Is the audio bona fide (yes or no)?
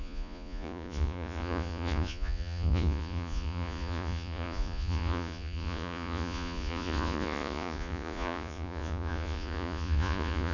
no